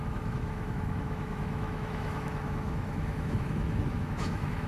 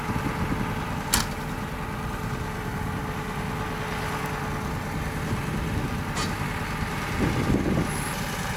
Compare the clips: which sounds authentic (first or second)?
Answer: second